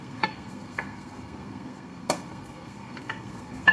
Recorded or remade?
remade